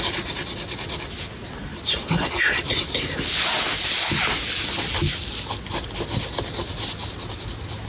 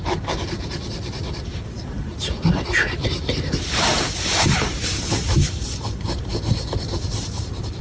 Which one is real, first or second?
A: first